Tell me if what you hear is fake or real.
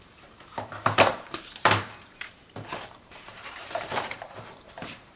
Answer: fake